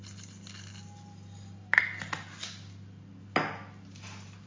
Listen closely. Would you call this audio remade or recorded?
recorded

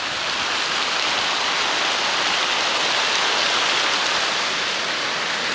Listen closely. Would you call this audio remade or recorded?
recorded